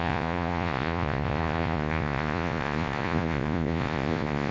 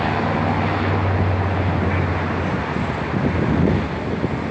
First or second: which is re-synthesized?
first